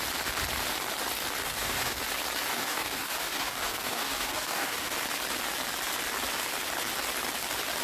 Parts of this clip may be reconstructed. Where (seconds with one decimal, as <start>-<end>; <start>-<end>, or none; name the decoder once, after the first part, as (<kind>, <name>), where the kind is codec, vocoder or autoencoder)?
1.4-2.0 (codec, DAC); 2.5-4.9